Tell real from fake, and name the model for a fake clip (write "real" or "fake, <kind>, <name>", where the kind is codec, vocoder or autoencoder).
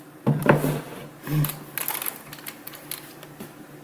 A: real